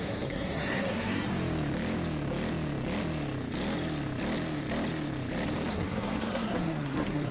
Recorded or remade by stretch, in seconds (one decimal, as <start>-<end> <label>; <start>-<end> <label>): 0.0-1.3 remade; 1.3-5.7 recorded; 5.7-7.3 remade

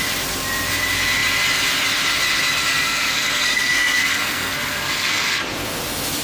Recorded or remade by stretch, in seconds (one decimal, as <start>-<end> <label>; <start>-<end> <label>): 0.0-2.7 recorded; 2.7-5.4 remade; 5.4-6.2 recorded

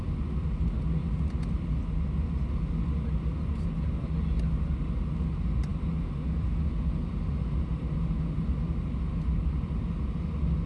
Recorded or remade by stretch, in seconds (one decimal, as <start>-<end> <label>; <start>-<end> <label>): 0.0-10.7 recorded

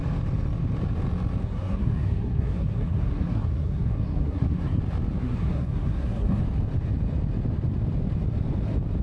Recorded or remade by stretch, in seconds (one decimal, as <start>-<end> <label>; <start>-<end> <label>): 0.0-1.4 recorded; 1.4-4.8 remade; 4.8-5.2 recorded; 5.2-6.4 remade; 6.4-9.0 recorded

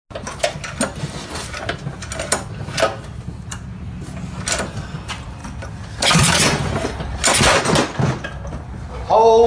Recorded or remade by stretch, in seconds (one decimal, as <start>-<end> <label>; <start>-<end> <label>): 0.0-9.5 recorded